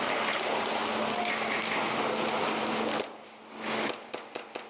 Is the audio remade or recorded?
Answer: recorded